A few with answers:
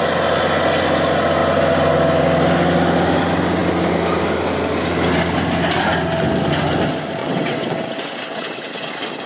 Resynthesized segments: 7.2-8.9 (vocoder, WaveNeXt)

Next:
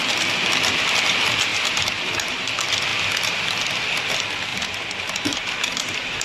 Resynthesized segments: 1.5-2.5 (vocoder, BigVGAN v2); 4.5-6.2

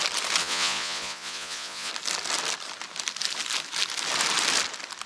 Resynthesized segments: 0.4-1.9 (vocoder, Vocos)

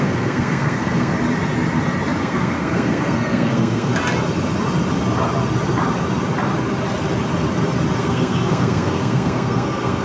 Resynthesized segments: 0.0-1.1 (codec, SNAC); 2.2-3.9; 8.0-10.0

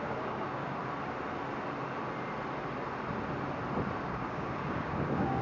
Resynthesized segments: 0.0-0.8 (codec, DAC); 4.0-5.4

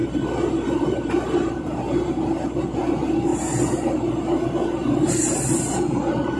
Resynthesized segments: 0.0-1.8 (vocoder, BigVGAN v2)